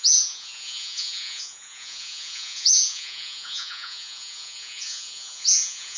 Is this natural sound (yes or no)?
no